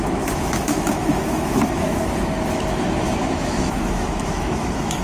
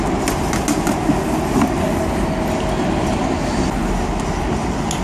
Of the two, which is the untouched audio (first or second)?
second